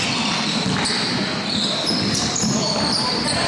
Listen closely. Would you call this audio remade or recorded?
recorded